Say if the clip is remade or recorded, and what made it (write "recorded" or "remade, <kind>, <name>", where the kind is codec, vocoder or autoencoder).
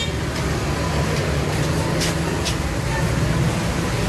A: recorded